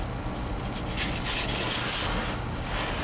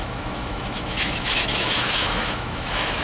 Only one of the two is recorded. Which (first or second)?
first